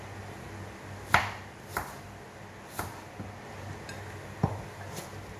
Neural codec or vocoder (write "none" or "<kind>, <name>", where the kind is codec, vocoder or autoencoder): none